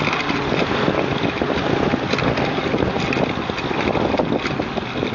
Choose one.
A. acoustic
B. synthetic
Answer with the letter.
A